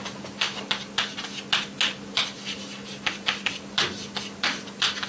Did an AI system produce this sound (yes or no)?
no